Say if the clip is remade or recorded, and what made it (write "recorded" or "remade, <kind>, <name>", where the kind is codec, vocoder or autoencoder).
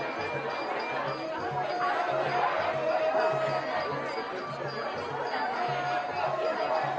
recorded